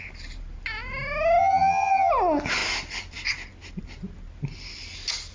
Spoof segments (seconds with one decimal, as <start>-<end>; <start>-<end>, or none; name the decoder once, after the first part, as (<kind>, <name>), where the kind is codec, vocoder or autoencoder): 1.4-2.1 (vocoder, HiFi-GAN)